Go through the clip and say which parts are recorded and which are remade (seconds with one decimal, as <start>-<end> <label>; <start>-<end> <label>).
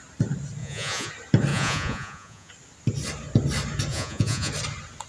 0.0-0.6 recorded; 0.6-1.1 remade; 1.1-1.5 recorded; 1.5-2.5 remade; 2.5-3.9 recorded; 3.9-4.5 remade; 4.5-5.1 recorded